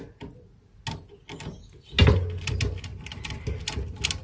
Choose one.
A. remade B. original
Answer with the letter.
B